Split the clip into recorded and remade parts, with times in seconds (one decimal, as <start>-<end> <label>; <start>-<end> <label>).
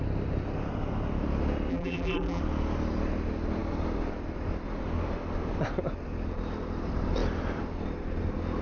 0.0-1.7 recorded; 1.7-2.4 remade; 2.4-8.6 recorded